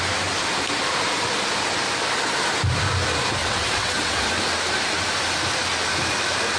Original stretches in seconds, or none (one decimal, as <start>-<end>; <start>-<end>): 0.0-3.4; 4.3-6.6